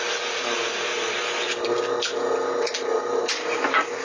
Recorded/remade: recorded